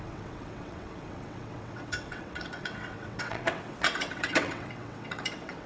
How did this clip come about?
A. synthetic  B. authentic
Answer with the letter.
A